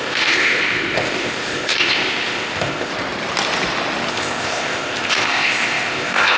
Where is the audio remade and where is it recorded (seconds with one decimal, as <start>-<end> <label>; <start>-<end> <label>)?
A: 0.0-2.9 remade; 2.9-4.1 recorded; 4.1-6.4 remade